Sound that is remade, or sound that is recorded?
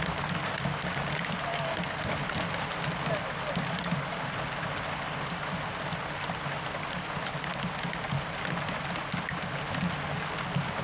recorded